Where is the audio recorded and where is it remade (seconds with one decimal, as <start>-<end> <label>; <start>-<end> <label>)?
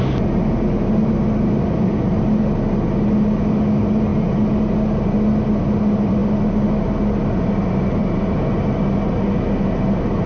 0.0-10.3 recorded